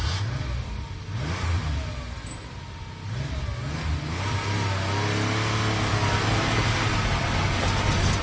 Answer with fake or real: real